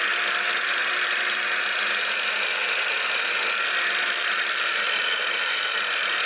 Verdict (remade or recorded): recorded